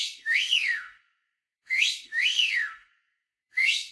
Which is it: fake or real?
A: fake